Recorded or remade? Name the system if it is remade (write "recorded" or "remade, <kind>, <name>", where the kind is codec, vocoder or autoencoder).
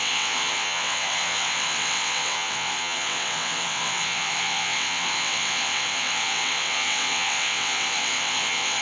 remade, vocoder, WaveNeXt